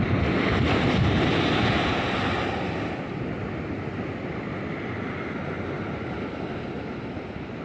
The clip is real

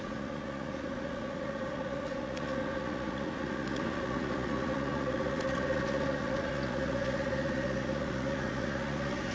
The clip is fake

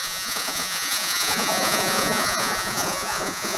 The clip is fake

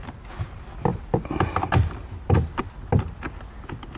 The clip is real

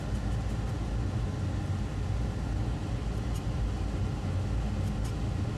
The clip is real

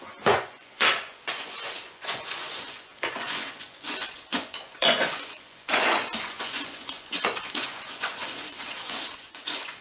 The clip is fake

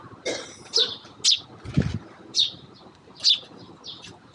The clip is real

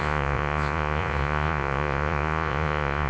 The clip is fake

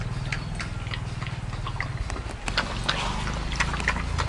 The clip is real